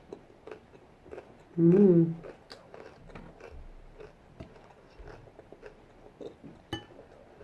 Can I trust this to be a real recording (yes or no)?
yes